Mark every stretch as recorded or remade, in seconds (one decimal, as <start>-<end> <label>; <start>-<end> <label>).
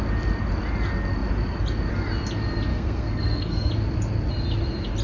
0.0-2.7 recorded; 2.7-3.7 remade; 3.7-5.0 recorded